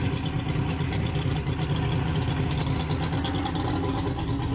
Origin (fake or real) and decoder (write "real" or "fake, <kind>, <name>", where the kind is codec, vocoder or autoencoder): real